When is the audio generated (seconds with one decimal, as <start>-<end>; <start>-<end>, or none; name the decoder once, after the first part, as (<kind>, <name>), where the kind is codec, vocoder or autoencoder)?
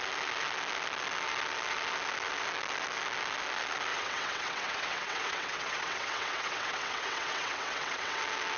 3.9-8.2 (vocoder, WaveNeXt)